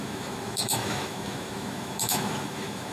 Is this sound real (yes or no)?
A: no